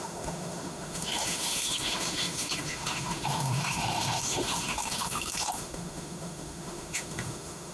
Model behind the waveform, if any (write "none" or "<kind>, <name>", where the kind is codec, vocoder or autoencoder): autoencoder, DAC-VAE